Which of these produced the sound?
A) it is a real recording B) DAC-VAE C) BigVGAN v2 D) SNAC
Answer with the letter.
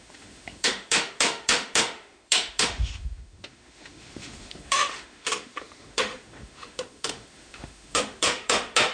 B